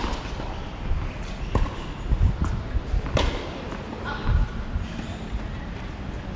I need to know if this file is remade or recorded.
recorded